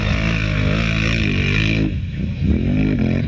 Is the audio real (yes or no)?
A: yes